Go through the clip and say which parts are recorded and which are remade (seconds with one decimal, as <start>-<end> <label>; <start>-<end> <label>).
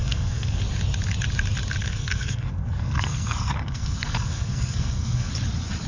0.0-0.6 remade; 0.6-1.8 recorded; 1.8-5.3 remade; 5.3-5.9 recorded